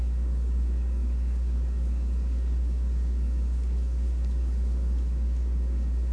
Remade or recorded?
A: remade